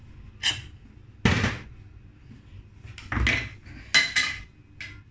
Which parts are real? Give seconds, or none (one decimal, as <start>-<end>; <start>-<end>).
0.0-5.1